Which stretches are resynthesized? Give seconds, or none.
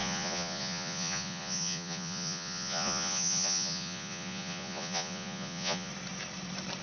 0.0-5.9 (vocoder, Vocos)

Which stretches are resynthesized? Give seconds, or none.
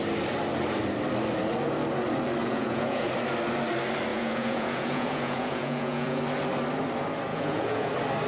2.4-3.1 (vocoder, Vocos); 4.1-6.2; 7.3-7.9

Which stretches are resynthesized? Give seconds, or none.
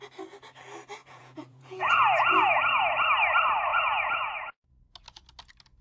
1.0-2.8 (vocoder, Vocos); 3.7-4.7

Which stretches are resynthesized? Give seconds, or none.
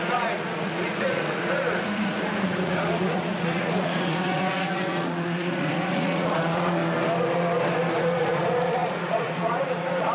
0.0-6.8 (vocoder, Vocos); 8.0-10.1